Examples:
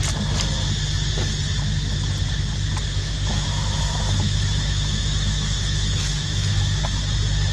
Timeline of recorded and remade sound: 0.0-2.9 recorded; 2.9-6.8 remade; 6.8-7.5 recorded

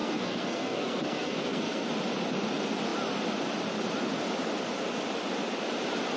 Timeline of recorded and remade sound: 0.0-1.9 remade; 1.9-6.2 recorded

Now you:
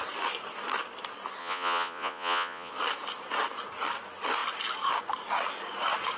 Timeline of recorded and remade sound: 0.0-1.4 recorded; 1.4-2.7 remade; 2.7-6.2 recorded